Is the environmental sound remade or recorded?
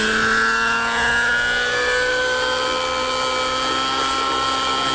recorded